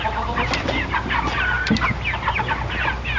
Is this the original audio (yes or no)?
yes